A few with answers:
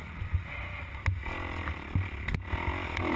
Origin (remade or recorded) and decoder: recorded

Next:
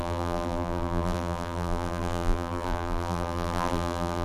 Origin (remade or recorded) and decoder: remade, vocoder, BigVGAN v2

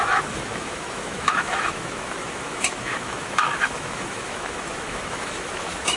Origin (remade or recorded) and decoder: remade, autoencoder, DAC-VAE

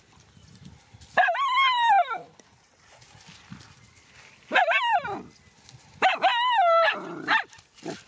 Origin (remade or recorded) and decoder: recorded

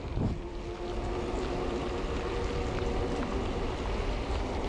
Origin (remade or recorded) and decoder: recorded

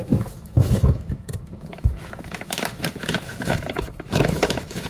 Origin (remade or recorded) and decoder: remade, autoencoder, DAC-VAE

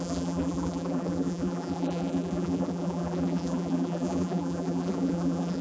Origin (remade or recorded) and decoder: remade, vocoder, BigVGAN v2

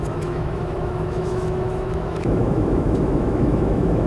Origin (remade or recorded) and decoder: remade, autoencoder, DAC-VAE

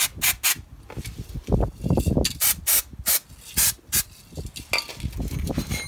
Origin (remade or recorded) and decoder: recorded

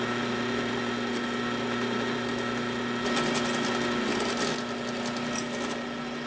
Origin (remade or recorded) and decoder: recorded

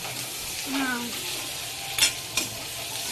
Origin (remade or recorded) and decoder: recorded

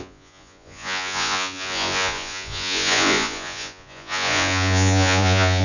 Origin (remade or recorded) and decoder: remade, vocoder, Vocos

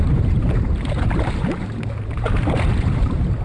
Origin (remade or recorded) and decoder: remade, vocoder, BigVGAN v2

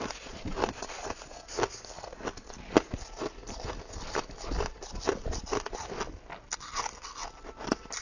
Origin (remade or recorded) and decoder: recorded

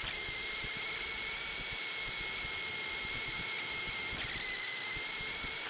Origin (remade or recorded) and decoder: recorded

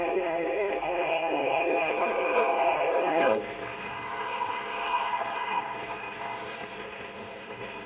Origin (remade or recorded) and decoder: remade, codec, SNAC